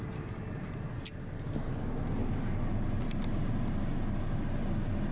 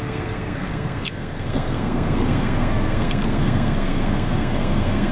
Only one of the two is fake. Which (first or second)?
second